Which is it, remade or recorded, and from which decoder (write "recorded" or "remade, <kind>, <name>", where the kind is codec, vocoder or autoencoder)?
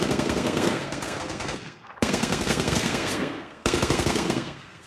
remade, codec, SNAC